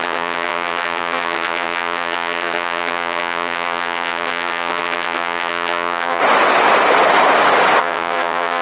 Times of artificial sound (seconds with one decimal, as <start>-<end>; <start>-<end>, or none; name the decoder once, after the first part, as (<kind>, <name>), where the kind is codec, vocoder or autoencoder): 0.0-6.2 (vocoder, HiFi-GAN); 7.8-8.6